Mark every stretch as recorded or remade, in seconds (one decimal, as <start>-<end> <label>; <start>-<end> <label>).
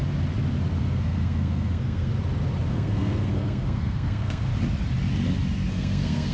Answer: 0.0-0.8 recorded; 0.8-2.1 remade; 2.1-2.7 recorded; 2.7-4.5 remade; 4.5-5.7 recorded; 5.7-6.3 remade